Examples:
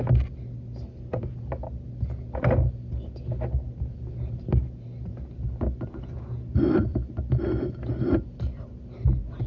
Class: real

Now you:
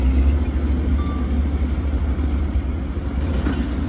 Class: real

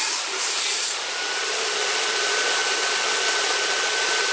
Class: real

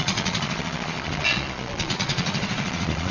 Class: fake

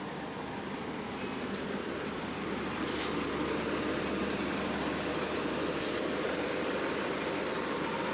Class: fake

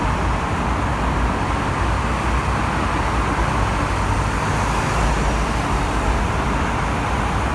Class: real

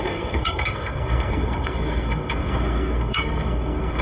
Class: fake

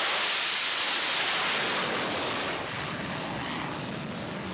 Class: real